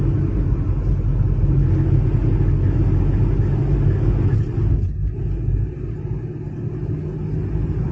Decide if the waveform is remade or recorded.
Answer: recorded